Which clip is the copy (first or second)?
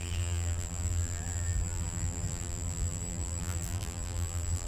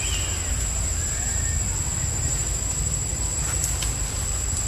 first